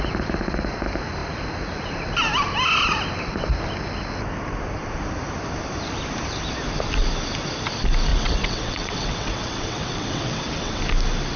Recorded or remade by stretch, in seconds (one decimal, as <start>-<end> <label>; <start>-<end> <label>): 0.0-8.1 recorded; 8.1-10.8 remade; 10.8-11.4 recorded